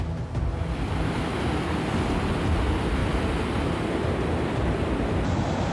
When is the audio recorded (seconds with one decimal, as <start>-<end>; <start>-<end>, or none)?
0.0-5.7

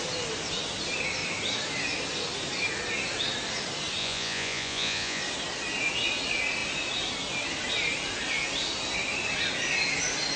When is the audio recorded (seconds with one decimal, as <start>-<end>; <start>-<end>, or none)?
0.0-4.0; 5.2-10.4

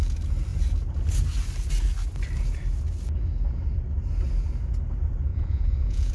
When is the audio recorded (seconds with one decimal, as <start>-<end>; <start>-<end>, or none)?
0.0-5.3

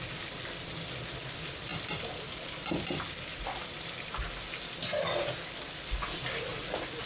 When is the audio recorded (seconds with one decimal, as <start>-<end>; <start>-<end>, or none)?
0.0-7.1

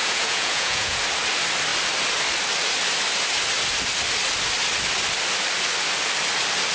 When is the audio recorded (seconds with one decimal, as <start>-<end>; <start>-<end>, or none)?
1.0-6.7

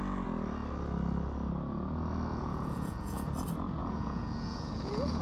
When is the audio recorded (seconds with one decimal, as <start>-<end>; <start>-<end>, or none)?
0.0-2.3; 3.3-3.8

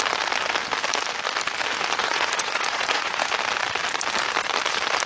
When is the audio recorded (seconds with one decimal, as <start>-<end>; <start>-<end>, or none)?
0.0-2.0; 3.3-5.1